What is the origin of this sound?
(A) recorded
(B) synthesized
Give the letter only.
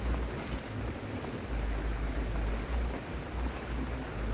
A